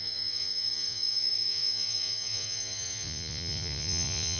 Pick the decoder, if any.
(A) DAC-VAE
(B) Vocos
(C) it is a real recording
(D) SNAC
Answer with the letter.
B